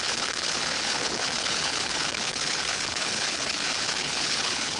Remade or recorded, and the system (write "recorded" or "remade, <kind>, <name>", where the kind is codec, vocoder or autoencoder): remade, codec, HILCodec